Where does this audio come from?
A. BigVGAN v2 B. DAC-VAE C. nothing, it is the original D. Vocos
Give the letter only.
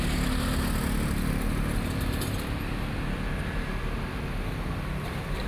C